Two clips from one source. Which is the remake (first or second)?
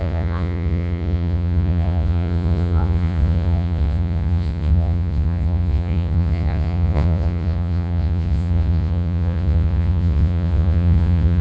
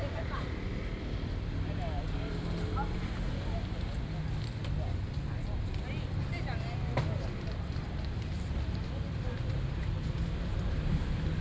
first